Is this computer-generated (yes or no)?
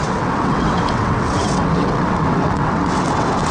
yes